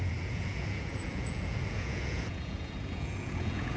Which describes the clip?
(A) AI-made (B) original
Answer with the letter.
A